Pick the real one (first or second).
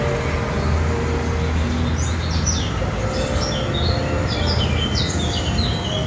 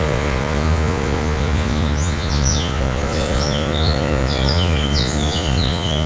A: first